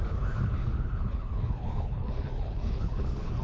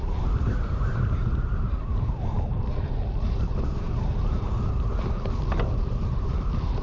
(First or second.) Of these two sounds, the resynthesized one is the first